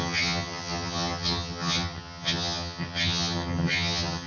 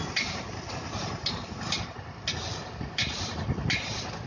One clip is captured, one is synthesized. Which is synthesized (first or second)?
first